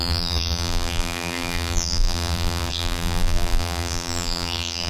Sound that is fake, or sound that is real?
fake